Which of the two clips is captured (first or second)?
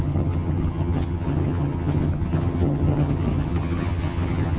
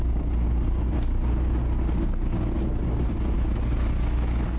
second